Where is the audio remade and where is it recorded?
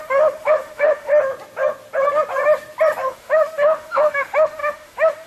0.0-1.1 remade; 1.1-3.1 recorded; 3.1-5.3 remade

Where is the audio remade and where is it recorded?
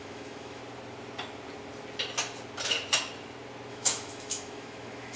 0.0-0.6 remade; 0.6-3.7 recorded; 3.7-5.2 remade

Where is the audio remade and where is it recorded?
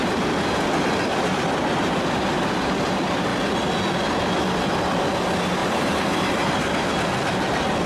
0.0-5.6 recorded; 5.6-6.5 remade; 6.5-7.9 recorded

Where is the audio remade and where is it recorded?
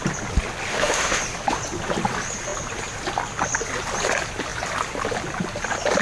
0.0-0.7 recorded; 0.7-1.2 remade; 1.2-6.0 recorded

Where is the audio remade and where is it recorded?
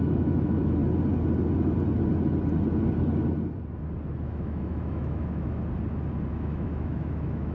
0.0-0.8 remade; 0.8-4.2 recorded; 4.2-5.6 remade; 5.6-6.3 recorded; 6.3-7.5 remade